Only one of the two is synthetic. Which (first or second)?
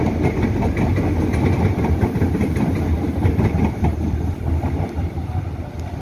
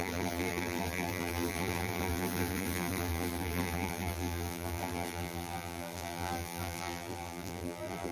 second